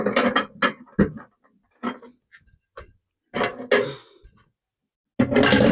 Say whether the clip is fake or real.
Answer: real